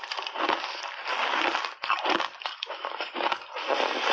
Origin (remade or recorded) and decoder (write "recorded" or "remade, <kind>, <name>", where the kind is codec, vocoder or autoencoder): recorded